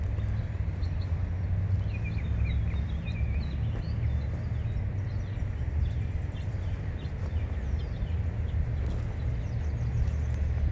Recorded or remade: recorded